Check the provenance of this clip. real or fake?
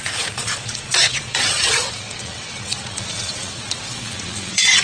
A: fake